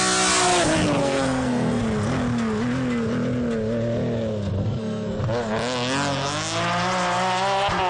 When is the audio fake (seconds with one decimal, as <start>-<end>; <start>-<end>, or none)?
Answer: 1.0-1.8; 4.6-5.2